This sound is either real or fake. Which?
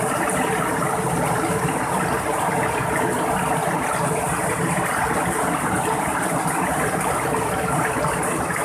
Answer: real